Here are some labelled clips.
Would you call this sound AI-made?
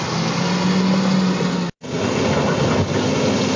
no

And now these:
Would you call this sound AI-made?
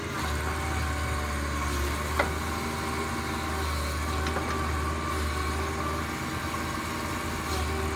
no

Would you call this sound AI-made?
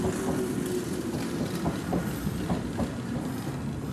no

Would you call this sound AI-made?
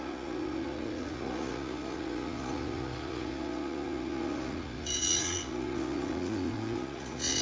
yes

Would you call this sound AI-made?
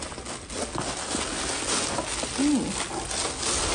no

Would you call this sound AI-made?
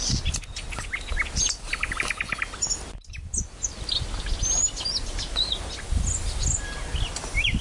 no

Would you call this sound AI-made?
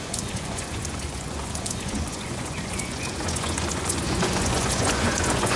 yes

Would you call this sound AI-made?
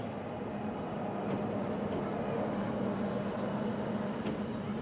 no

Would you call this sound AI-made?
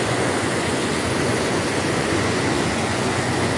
yes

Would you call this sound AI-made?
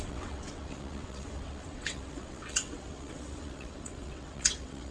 yes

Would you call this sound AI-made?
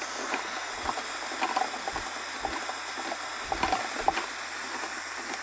no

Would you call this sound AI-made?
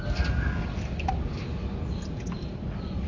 no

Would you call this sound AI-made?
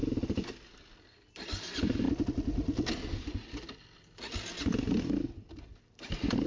no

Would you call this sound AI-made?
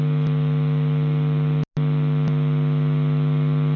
no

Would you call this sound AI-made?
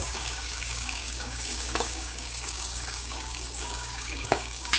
yes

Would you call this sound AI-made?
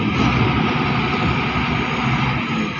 no